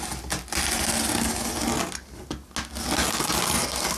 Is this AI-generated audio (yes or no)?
no